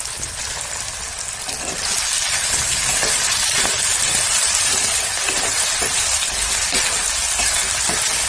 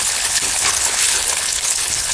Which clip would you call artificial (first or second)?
second